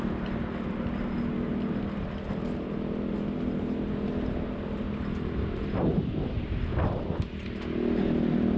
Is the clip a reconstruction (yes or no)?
no